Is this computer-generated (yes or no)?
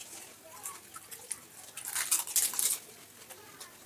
no